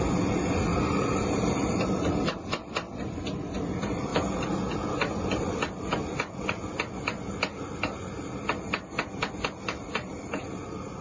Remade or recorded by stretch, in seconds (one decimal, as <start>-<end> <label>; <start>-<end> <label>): 0.0-0.7 remade; 0.7-1.6 recorded; 1.6-4.1 remade; 4.1-9.3 recorded; 9.3-11.0 remade